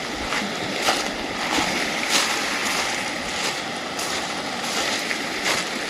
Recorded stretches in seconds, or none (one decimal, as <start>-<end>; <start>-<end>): 0.0-5.9